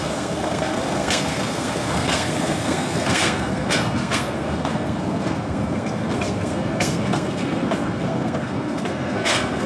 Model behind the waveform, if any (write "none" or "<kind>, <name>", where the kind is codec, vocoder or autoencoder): codec, SNAC